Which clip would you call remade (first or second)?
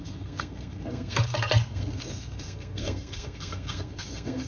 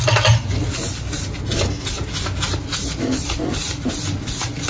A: first